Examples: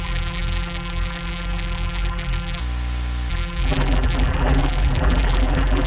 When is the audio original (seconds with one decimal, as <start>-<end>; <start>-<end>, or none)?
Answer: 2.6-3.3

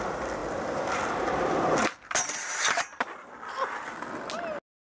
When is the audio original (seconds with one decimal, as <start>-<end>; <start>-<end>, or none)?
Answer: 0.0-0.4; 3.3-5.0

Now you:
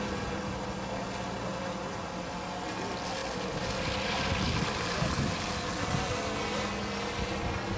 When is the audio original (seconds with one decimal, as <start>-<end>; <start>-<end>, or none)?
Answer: 0.0-3.2; 4.4-7.8

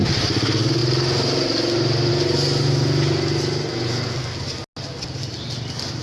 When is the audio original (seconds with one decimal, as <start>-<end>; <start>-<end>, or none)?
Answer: 0.0-6.0

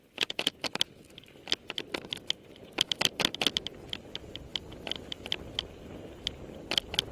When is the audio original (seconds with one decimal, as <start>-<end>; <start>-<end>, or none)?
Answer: 0.0-7.1

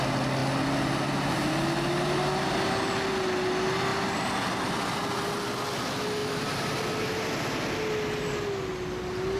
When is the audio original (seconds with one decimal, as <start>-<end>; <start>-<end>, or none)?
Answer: 0.0-6.2; 6.8-9.4